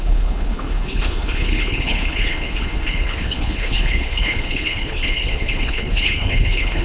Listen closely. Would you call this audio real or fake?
fake